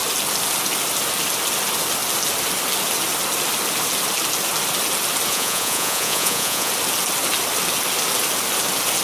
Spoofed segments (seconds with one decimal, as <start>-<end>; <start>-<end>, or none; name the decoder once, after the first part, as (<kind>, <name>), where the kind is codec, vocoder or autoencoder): 5.3-6.7 (vocoder, Vocos)

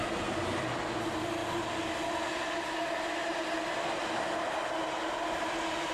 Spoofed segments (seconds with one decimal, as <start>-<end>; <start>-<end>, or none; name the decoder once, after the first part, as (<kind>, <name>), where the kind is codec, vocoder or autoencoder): 0.0-0.8 (vocoder, BigVGAN v2)

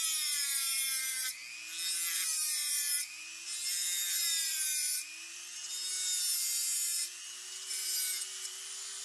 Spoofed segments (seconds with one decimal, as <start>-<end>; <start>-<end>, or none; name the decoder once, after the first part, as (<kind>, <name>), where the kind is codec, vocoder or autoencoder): 0.0-1.4 (vocoder, BigVGAN v2); 2.1-9.0

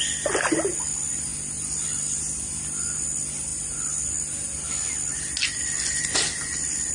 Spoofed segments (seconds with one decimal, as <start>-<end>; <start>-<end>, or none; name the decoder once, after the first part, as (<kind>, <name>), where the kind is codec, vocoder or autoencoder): none

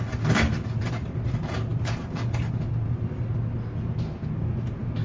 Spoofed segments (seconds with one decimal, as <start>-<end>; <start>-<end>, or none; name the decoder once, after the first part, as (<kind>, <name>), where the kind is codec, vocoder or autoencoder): none

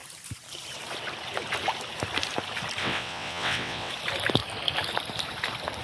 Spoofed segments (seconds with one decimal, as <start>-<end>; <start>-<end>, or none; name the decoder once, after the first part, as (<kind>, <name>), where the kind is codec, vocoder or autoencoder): 2.8-3.9 (vocoder, WaveNeXt)

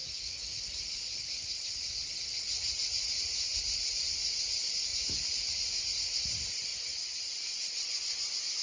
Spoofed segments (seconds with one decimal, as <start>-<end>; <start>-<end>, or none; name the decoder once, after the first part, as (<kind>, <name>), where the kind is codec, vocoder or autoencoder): 0.0-0.6 (autoencoder, DAC-VAE)